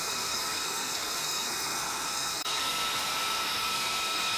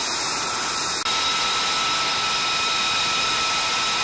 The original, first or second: second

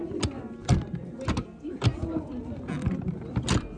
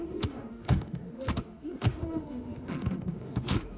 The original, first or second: first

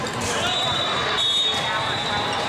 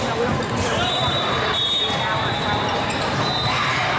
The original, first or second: first